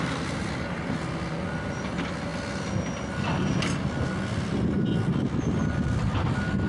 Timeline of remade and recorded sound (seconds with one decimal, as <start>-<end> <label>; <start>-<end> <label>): 0.0-6.7 recorded